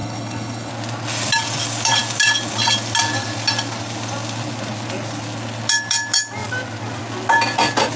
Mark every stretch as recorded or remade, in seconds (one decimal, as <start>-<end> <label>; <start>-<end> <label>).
0.0-0.7 remade; 0.7-8.0 recorded